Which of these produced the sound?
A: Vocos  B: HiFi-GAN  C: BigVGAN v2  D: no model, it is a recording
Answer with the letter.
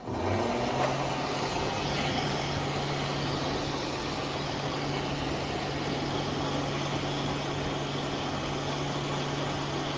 D